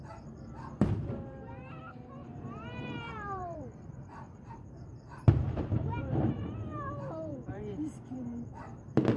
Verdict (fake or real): fake